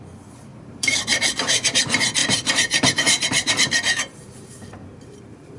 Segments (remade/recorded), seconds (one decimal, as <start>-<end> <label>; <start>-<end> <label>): 0.0-0.5 recorded; 0.5-1.8 remade; 1.8-2.2 recorded; 2.2-5.6 remade